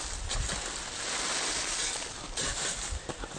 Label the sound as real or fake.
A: real